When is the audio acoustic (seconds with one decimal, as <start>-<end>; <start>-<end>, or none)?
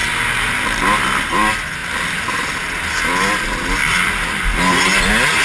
0.0-5.4